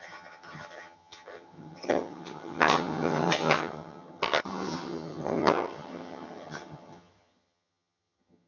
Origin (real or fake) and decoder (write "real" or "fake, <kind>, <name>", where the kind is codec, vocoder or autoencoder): fake, vocoder, HiFi-GAN